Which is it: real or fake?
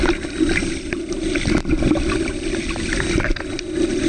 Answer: real